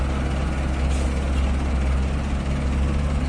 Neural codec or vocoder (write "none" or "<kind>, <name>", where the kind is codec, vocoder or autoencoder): none